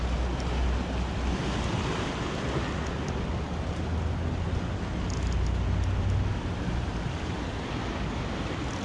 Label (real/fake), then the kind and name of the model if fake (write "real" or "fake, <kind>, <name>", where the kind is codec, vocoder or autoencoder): real